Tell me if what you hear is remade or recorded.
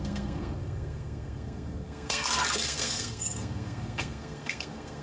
remade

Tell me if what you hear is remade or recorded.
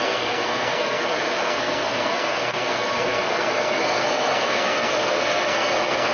remade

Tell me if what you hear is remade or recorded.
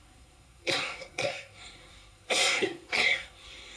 remade